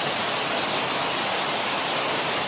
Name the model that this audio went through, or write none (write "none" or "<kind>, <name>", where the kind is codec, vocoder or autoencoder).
none